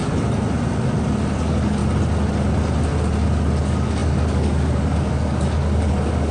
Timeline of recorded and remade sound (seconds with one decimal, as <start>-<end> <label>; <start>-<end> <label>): 0.0-1.4 recorded; 1.4-1.8 remade; 1.8-3.6 recorded; 3.6-6.3 remade